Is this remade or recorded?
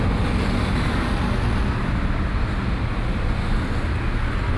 recorded